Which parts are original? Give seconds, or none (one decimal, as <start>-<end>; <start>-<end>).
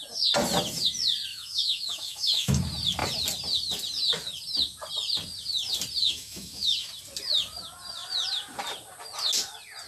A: 0.0-1.3; 2.6-6.0; 6.9-9.9